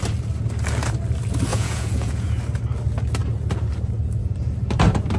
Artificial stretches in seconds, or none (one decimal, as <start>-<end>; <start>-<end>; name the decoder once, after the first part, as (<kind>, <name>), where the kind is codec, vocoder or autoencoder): 1.5-2.3 (vocoder, Vocos)